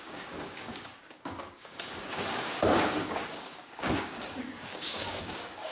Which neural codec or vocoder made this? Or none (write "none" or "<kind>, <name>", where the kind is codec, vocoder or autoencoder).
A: codec, DAC